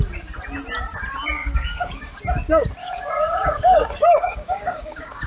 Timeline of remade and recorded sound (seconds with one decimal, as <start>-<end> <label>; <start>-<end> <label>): 0.0-1.4 recorded; 1.4-2.2 remade; 2.2-2.8 recorded; 2.8-5.3 remade

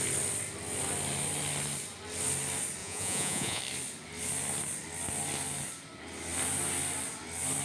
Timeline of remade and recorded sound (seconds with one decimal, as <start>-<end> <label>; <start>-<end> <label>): 0.0-2.8 recorded; 2.8-3.6 remade; 3.6-7.6 recorded

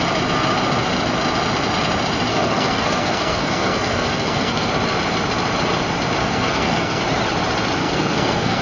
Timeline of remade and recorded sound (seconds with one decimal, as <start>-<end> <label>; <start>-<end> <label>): 0.0-2.3 recorded; 2.3-4.7 remade; 4.7-6.2 recorded; 6.2-7.0 remade; 7.0-7.8 recorded; 7.8-8.6 remade

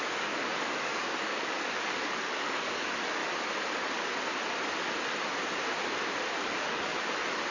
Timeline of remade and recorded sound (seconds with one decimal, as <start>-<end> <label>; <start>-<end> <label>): 0.0-3.2 remade; 3.2-6.4 recorded; 6.4-6.9 remade; 6.9-7.5 recorded

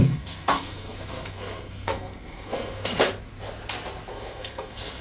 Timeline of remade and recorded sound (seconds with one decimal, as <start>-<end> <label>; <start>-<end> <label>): 0.0-2.9 remade; 2.9-4.1 recorded; 4.1-5.0 remade

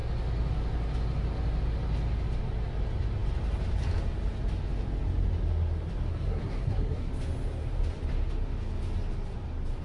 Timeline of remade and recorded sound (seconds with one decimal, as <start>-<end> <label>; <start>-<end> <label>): 0.0-6.1 recorded; 6.1-7.1 remade; 7.1-9.8 recorded